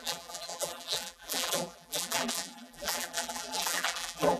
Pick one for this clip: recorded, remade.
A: remade